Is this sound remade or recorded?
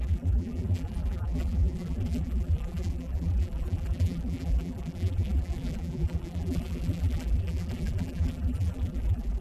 remade